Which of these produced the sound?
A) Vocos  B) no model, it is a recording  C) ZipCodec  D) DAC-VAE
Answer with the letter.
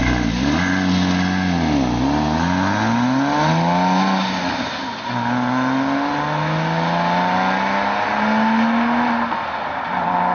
B